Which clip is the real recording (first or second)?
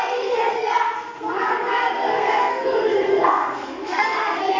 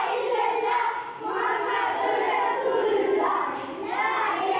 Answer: second